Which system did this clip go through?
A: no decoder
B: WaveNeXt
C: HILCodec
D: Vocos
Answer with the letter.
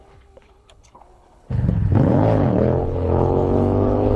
C